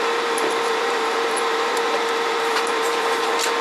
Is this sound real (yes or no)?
no